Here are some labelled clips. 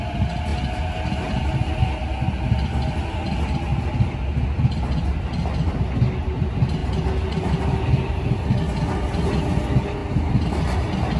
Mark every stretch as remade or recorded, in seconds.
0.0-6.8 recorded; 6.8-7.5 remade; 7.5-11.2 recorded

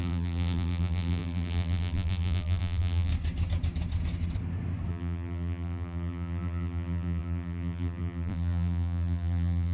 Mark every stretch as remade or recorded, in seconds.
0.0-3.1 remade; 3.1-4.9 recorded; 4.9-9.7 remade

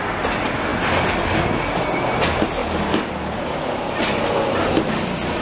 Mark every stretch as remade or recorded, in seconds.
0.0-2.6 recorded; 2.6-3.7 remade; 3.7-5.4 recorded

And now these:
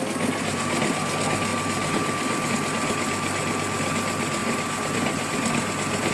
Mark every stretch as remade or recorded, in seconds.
0.0-6.1 recorded

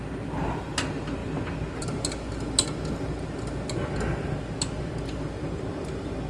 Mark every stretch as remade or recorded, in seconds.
0.0-6.3 recorded

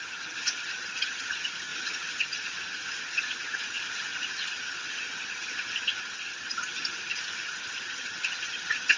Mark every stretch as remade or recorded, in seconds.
0.0-9.0 remade